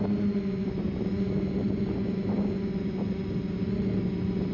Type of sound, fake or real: real